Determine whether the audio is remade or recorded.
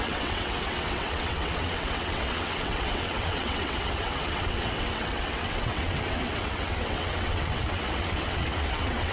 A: remade